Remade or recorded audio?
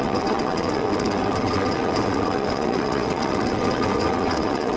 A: remade